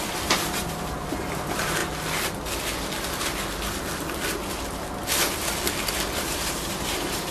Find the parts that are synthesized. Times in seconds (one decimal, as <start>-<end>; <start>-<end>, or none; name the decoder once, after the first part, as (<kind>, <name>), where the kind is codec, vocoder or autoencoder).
0.0-1.8 (vocoder, BigVGAN v2); 6.2-7.3